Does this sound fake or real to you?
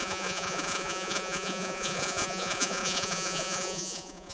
fake